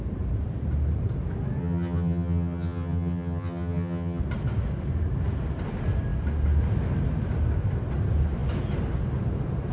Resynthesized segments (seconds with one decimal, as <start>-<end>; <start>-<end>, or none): 1.6-4.2